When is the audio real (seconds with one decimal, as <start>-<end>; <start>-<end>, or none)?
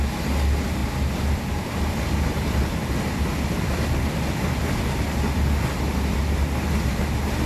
0.0-0.8; 4.5-7.5